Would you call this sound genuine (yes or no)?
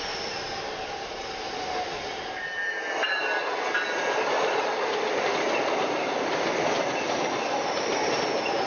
yes